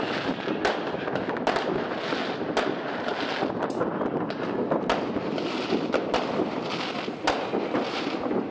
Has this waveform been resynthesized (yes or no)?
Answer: no